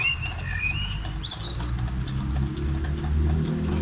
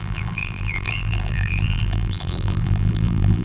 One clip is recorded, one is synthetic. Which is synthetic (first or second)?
second